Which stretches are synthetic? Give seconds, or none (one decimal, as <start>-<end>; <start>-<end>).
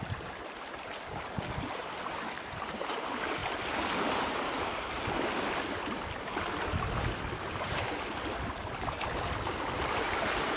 none